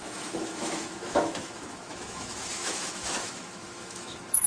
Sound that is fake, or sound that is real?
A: fake